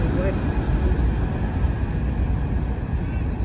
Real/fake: real